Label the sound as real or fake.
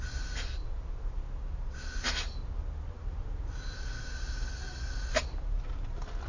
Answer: real